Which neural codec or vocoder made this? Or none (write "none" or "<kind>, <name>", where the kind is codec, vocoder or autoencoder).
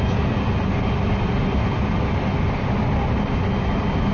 none